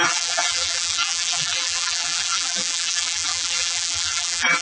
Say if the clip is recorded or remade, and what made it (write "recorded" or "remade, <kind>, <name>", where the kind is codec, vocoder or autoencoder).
remade, vocoder, BigVGAN v2